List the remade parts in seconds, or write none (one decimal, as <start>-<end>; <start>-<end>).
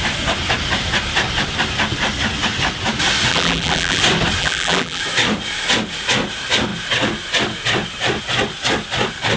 3.3-4.0; 4.4-5.0